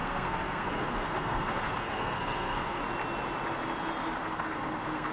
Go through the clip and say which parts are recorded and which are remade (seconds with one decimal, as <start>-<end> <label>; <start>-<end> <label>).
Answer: 0.0-2.8 remade; 2.8-4.2 recorded; 4.2-5.1 remade